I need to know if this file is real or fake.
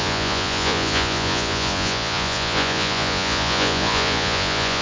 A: fake